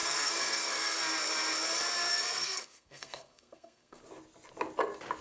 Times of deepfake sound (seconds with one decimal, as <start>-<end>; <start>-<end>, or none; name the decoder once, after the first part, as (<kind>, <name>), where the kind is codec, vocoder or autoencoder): 0.0-1.0 (codec, SNAC); 2.1-4.0